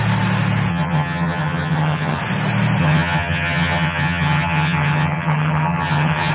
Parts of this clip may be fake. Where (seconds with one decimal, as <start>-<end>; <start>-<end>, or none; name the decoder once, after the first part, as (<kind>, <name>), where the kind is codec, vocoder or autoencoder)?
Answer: 0.7-2.2 (vocoder, HiFi-GAN); 2.8-6.3